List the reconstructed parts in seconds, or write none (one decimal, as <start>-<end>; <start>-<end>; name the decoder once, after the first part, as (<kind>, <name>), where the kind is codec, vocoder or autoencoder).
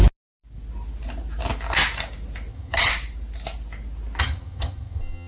2.5-2.9 (vocoder, HiFi-GAN); 4.2-5.3